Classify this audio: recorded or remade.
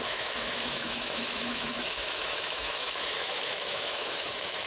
remade